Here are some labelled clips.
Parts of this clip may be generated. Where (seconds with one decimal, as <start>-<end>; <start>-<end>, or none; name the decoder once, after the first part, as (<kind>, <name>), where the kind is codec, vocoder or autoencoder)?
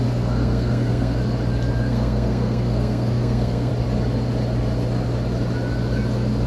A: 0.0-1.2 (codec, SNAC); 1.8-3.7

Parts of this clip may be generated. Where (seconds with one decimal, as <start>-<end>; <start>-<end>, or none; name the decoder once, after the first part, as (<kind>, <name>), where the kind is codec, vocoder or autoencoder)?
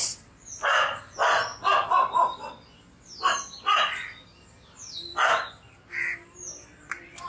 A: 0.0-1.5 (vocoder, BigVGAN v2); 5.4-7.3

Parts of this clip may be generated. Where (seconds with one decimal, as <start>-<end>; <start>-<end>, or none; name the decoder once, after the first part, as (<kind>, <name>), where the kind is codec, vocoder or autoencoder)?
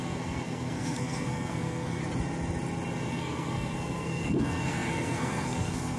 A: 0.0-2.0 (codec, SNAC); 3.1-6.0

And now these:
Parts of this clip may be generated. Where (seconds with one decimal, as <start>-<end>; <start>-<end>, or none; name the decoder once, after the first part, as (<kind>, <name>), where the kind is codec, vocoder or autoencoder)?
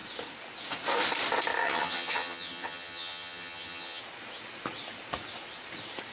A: 1.6-4.0 (vocoder, HiFi-GAN)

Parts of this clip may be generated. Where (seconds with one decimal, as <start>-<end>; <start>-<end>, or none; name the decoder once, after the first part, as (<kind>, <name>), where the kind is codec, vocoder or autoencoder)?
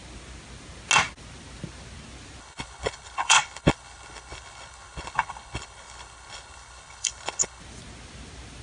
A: 2.4-7.6 (codec, HILCodec)